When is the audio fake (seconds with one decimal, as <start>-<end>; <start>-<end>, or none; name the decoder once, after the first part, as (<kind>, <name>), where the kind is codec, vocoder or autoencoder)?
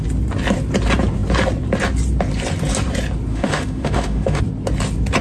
3.3-4.4 (autoencoder, DAC-VAE)